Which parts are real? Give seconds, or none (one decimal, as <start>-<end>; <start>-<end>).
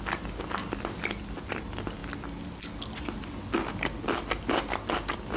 0.0-5.4